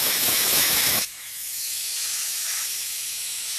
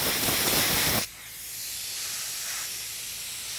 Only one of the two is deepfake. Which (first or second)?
first